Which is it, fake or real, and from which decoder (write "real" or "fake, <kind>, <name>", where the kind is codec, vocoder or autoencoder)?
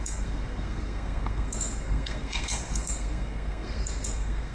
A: fake, codec, SNAC